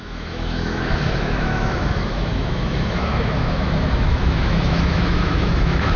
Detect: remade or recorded remade